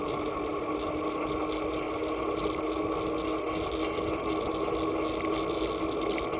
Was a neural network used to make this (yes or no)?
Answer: no